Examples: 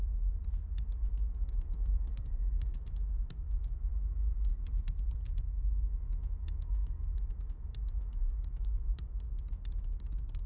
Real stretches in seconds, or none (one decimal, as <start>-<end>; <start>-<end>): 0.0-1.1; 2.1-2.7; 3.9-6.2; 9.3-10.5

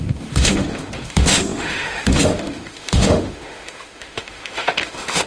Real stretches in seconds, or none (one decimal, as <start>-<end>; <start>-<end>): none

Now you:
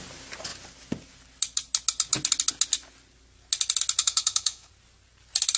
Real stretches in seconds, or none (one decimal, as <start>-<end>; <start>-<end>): 0.0-4.0; 4.7-5.6